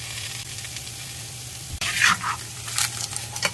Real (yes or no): no